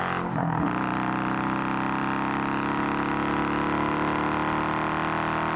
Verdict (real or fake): real